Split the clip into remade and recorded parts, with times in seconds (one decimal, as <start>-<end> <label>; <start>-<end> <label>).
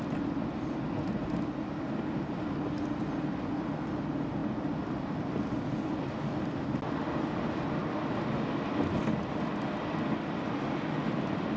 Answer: 0.0-11.6 recorded